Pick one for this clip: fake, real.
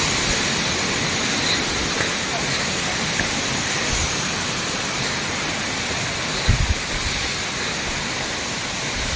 real